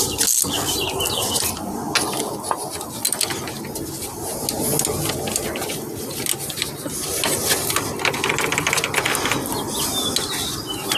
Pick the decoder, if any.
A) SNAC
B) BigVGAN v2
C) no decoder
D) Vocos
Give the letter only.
C